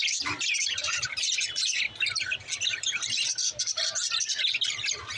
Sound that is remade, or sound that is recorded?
recorded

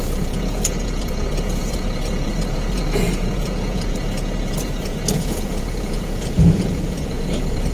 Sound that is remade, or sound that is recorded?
remade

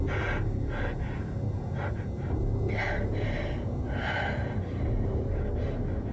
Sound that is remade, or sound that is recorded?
recorded